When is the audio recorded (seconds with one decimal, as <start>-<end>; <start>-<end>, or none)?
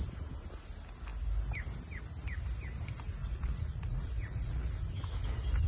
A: 0.0-3.2; 4.7-5.7